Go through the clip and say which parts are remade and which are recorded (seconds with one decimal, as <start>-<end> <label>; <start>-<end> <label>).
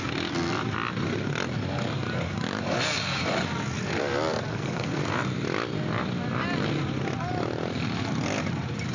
0.0-4.5 recorded; 4.5-5.0 remade; 5.0-8.9 recorded